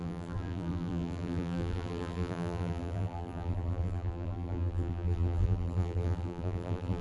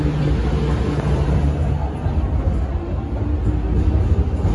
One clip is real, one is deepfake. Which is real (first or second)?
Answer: second